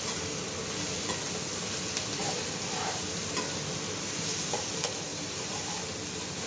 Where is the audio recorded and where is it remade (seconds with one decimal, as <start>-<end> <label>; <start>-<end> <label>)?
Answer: 0.0-5.1 recorded; 5.1-5.6 remade; 5.6-6.5 recorded